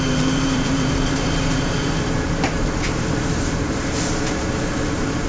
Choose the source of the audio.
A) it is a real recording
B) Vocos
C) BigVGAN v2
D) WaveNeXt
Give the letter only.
C